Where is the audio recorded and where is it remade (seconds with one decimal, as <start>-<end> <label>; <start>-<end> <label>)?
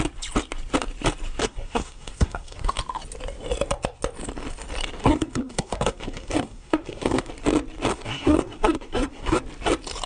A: 0.0-1.4 recorded; 1.4-2.8 remade; 2.8-5.0 recorded; 5.0-7.3 remade; 7.3-7.9 recorded; 7.9-9.4 remade; 9.4-10.1 recorded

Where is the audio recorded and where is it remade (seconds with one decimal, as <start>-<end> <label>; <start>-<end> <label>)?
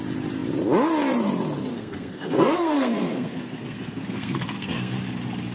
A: 0.0-1.7 recorded; 1.7-5.0 remade; 5.0-5.5 recorded